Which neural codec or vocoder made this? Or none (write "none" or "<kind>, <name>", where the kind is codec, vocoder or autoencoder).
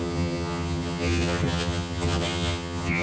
vocoder, HiFi-GAN